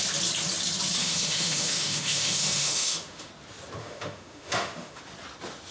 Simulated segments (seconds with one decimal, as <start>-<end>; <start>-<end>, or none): 1.0-3.3; 3.8-5.0